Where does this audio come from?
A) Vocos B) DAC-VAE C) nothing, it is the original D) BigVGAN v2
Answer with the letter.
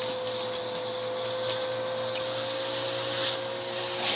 C